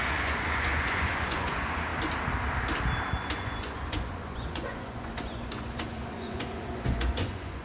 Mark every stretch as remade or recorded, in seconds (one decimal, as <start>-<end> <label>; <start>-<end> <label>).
0.0-1.9 remade; 1.9-3.2 recorded; 3.2-7.6 remade